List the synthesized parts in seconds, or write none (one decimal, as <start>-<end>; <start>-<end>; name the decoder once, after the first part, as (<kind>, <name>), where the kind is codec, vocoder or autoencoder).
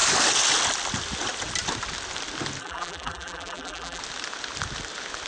2.6-4.0 (vocoder, BigVGAN v2)